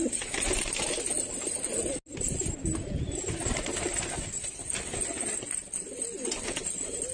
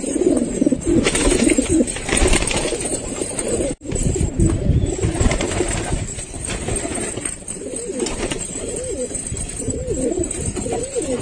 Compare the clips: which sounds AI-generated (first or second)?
second